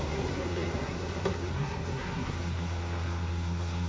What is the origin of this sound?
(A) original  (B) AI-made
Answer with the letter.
B